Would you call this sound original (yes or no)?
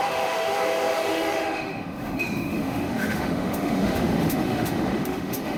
no